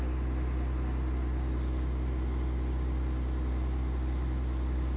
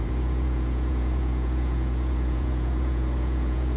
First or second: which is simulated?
second